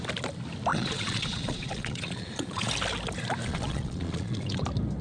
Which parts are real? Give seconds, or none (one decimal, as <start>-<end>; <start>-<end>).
0.0-0.7; 2.7-3.4; 4.6-5.0